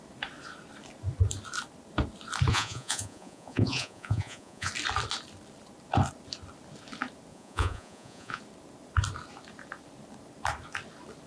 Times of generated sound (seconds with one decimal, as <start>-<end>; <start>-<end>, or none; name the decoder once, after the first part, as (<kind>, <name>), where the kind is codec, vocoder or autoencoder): 2.5-4.7 (vocoder, Vocos); 7.3-8.4